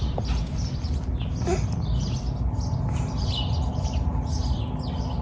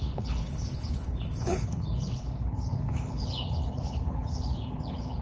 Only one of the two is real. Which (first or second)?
first